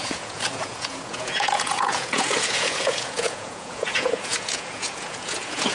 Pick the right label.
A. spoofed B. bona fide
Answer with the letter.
A